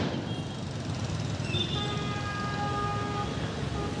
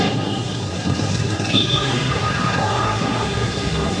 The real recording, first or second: first